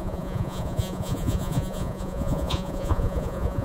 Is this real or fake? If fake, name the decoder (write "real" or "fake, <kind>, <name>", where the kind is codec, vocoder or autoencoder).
fake, vocoder, Vocos